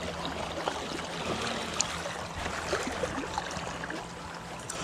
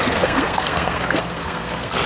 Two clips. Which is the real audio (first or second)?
first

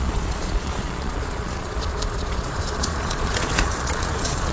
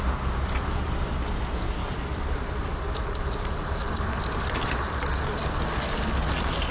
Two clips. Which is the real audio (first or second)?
second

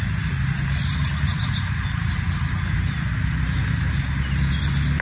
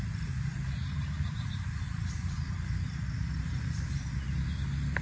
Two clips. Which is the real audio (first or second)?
first